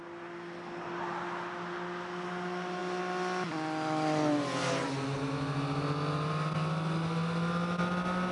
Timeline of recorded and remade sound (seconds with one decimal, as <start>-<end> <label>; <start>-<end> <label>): 0.0-8.3 recorded